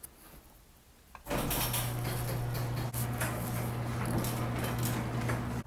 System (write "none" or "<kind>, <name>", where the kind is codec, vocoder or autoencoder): none